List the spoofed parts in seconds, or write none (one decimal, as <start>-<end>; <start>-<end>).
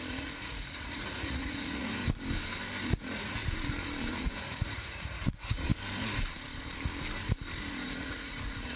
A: 0.0-2.0; 3.0-3.4; 4.1-5.7; 7.7-8.8